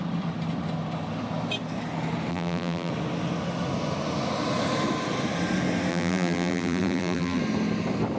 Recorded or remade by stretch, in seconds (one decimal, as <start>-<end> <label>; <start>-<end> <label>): 0.0-2.3 recorded; 2.3-2.9 remade; 2.9-5.9 recorded; 5.9-7.4 remade; 7.4-8.2 recorded